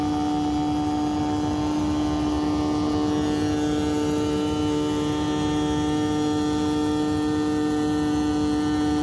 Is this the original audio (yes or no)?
yes